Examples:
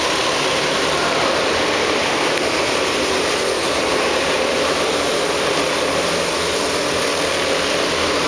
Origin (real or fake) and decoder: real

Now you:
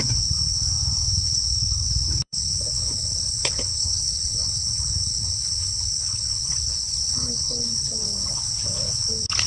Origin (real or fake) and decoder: fake, codec, HILCodec